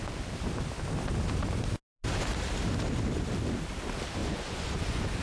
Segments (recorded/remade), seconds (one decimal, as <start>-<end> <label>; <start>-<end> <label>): 0.0-4.2 recorded; 4.2-5.2 remade